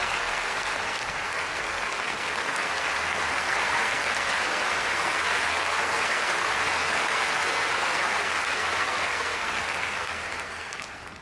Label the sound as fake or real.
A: fake